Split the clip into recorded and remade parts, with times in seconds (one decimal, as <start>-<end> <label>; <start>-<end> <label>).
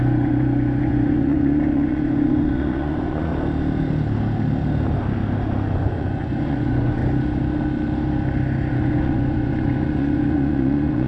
0.0-3.3 remade; 3.3-5.7 recorded; 5.7-7.0 remade; 7.0-8.7 recorded; 8.7-11.1 remade